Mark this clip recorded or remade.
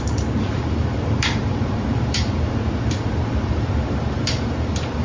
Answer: remade